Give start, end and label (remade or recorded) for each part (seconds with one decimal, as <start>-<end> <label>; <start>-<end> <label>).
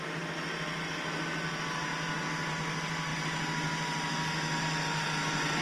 0.0-5.6 recorded